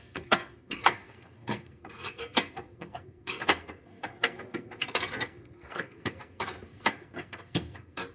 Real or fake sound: fake